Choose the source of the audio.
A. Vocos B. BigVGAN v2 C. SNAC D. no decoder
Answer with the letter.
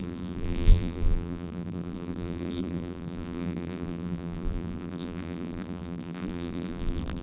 B